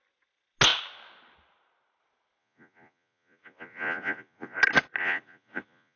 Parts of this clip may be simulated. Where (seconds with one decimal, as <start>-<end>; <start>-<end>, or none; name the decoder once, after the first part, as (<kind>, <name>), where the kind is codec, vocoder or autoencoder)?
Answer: 2.4-4.6 (vocoder, Vocos); 5.0-6.0